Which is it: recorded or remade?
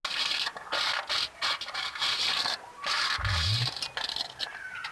recorded